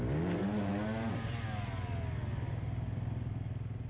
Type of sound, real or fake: real